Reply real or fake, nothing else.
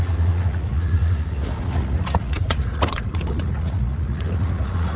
fake